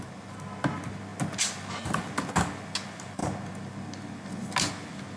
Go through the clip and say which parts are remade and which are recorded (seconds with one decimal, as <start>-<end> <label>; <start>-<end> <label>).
0.0-5.2 recorded

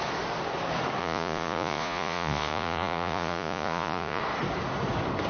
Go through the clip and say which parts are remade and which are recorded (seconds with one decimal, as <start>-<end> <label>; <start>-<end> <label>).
0.0-1.0 recorded; 1.0-4.2 remade; 4.2-5.3 recorded

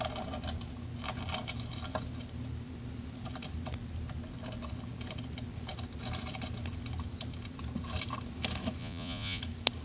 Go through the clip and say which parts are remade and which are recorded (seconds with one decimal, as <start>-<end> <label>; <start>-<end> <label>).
0.0-8.8 recorded; 8.8-9.4 remade; 9.4-9.8 recorded

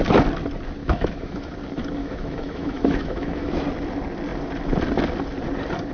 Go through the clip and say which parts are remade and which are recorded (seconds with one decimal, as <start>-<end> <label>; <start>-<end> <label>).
0.0-0.8 recorded; 0.8-1.5 remade; 1.5-2.0 recorded; 2.0-3.6 remade; 3.6-5.9 recorded